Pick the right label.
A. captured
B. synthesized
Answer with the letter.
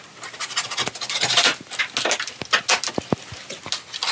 A